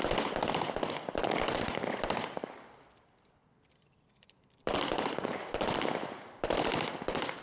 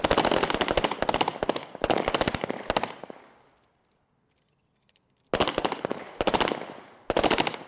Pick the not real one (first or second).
first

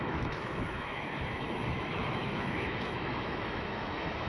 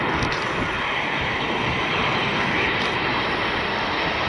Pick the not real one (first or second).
first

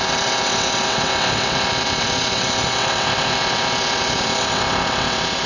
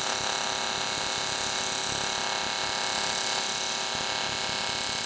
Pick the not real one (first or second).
first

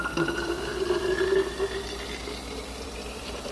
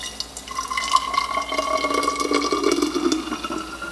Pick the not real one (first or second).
first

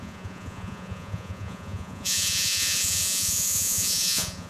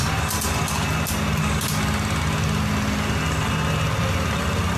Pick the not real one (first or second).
first